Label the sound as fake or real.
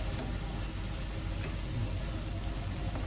real